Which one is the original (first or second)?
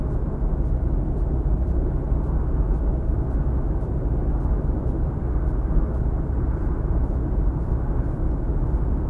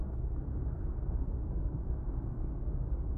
first